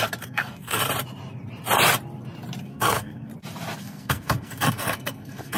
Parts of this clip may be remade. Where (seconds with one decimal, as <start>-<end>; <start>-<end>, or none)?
0.0-0.8; 2.6-3.3; 3.8-5.6